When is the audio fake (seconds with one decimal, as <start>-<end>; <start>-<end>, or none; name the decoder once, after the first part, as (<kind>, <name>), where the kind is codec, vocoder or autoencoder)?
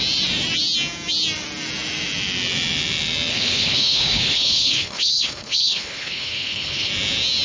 3.3-6.9 (codec, HILCodec)